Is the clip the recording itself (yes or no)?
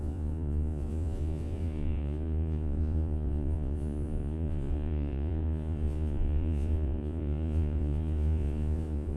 no